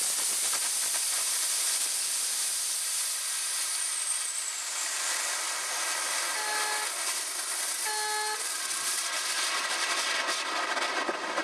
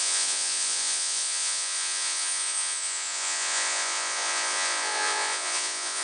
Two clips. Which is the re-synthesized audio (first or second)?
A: second